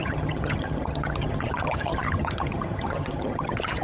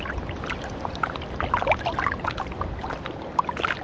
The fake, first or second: first